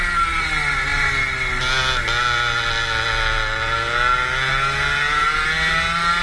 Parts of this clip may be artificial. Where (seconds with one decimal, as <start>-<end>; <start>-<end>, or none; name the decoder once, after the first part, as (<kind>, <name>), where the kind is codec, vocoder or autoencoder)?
none